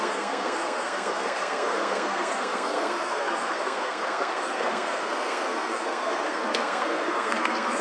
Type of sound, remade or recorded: remade